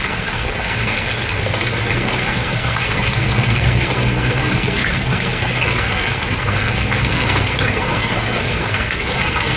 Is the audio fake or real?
fake